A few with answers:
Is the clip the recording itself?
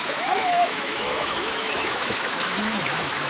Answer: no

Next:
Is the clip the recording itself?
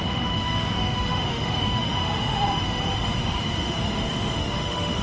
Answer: no